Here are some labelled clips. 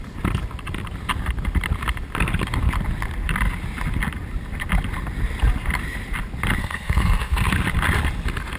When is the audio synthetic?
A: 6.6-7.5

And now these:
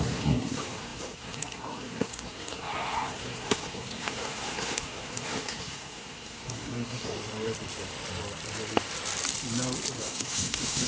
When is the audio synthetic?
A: 0.0-7.1; 10.0-10.9